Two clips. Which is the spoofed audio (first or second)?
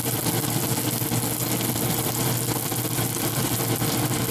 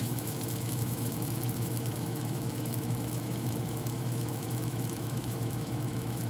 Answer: second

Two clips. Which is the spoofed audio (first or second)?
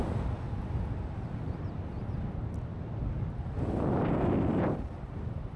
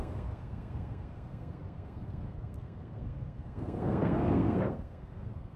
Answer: second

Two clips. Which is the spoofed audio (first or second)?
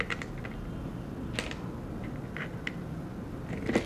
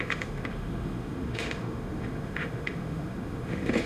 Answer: second